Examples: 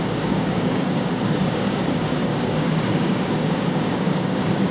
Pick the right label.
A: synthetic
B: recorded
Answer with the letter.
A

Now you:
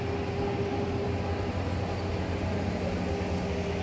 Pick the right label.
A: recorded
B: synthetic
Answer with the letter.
A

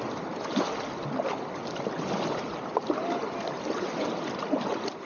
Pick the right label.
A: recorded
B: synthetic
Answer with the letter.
A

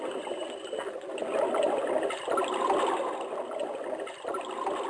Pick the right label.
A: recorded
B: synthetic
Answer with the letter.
A